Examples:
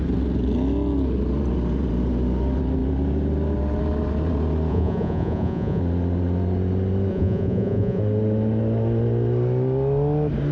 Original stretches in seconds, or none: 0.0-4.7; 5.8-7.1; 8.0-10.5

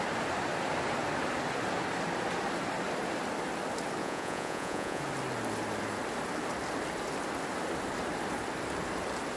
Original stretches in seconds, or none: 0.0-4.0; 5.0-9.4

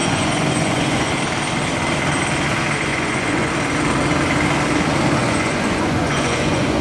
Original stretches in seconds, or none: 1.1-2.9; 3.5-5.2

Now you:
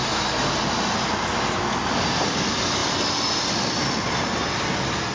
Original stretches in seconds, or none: 0.0-5.1